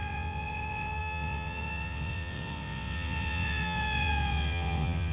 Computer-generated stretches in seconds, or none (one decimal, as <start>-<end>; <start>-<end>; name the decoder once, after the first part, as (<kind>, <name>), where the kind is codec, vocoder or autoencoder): 0.0-5.1 (vocoder, WaveNeXt)